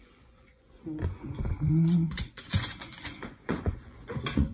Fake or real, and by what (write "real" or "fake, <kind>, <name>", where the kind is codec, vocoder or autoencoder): fake, vocoder, Vocos